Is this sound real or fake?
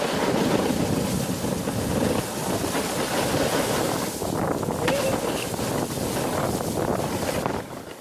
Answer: real